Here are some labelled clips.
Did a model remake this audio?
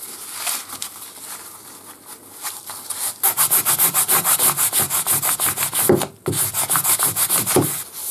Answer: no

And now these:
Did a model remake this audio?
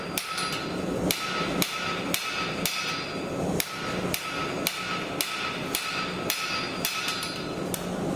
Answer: no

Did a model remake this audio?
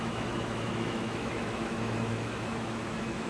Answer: yes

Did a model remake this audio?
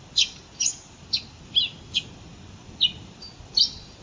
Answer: no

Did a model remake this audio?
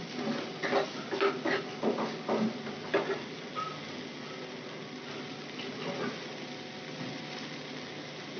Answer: no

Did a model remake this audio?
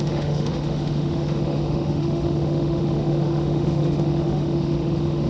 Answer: yes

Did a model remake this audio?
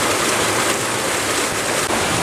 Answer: no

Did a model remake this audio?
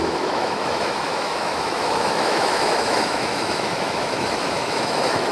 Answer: yes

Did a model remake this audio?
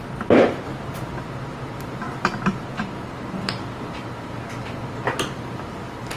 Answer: no